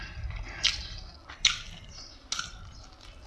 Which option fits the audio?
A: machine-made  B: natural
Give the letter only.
B